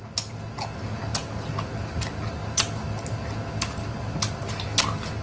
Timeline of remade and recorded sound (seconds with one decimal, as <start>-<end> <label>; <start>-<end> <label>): 0.0-5.2 recorded